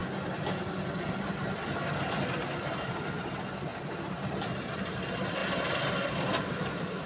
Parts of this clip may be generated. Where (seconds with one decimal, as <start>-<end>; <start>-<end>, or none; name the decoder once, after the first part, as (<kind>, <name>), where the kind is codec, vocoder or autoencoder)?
none